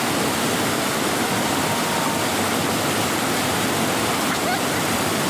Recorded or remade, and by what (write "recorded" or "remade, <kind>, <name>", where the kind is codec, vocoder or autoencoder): recorded